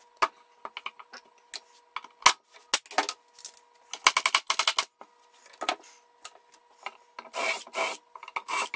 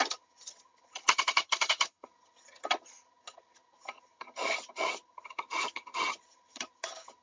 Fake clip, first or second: second